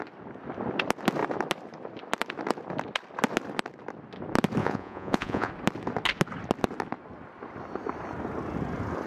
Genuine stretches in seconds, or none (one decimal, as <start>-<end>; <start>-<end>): 0.0-4.6; 5.5-9.1